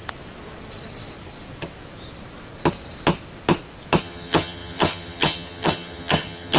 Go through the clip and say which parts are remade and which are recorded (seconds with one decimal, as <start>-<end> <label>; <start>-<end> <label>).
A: 0.0-4.0 recorded; 4.0-6.6 remade